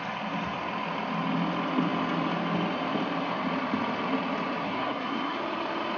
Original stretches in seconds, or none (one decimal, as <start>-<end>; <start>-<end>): 0.0-4.6; 5.4-6.0